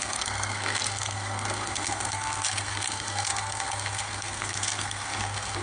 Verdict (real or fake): fake